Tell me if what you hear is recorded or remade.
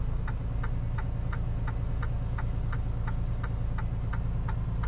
recorded